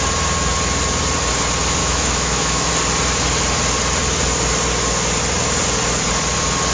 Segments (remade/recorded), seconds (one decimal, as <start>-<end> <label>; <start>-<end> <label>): 0.0-1.8 recorded; 1.8-2.7 remade; 2.7-6.7 recorded